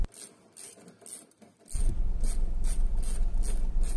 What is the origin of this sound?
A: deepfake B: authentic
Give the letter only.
B